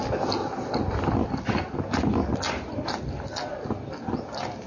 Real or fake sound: real